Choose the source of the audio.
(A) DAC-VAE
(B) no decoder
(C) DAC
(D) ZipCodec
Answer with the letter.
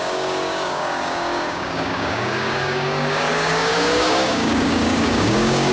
C